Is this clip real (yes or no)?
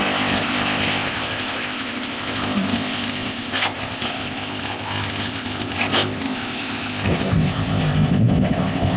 no